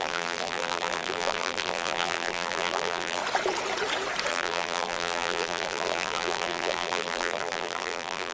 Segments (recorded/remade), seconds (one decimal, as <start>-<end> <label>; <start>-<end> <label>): 0.0-3.2 remade; 3.2-4.3 recorded; 4.3-8.3 remade